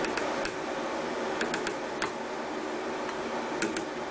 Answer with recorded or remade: recorded